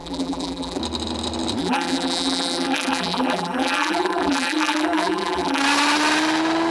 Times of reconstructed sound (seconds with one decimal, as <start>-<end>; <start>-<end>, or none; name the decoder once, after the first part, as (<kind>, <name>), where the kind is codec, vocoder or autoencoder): 0.0-0.8 (vocoder, BigVGAN v2); 1.6-5.6